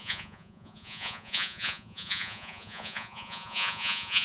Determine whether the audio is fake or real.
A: fake